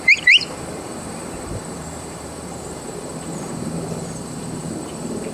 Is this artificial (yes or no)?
yes